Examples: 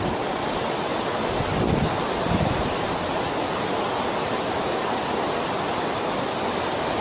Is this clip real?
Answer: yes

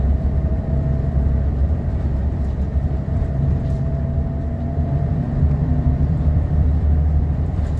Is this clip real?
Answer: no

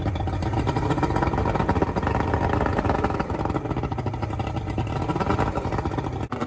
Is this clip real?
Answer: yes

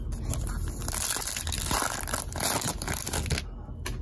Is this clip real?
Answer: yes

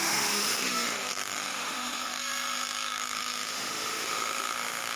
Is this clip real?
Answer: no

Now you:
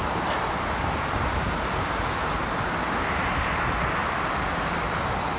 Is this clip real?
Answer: yes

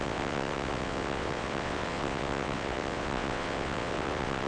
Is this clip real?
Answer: no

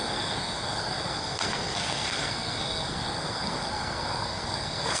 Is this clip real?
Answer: no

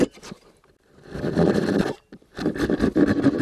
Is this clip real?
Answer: yes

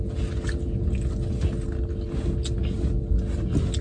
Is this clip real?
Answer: yes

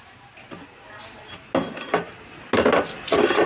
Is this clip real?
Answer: yes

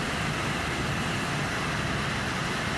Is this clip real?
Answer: yes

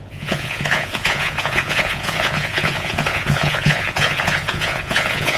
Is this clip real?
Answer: no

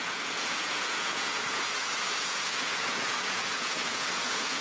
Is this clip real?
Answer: no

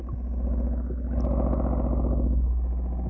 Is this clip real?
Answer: yes